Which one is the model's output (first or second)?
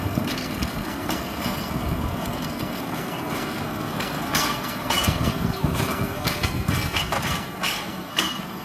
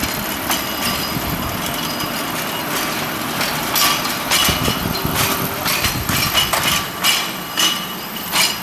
first